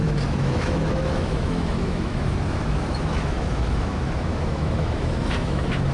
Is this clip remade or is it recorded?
remade